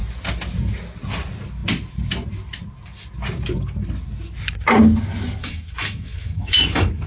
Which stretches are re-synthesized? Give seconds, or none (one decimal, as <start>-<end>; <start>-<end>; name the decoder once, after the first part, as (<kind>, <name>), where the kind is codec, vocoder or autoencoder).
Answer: 5.4-7.1 (autoencoder, DAC-VAE)